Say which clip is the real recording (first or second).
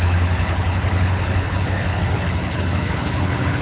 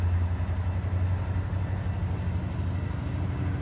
second